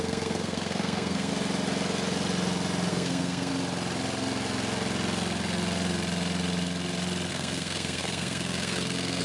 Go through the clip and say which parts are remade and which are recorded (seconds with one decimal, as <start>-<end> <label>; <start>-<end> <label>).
0.0-1.3 remade; 1.3-2.9 recorded; 2.9-3.5 remade; 3.5-7.3 recorded; 7.3-9.2 remade